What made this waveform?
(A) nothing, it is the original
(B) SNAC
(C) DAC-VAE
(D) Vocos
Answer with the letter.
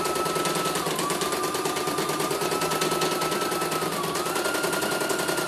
A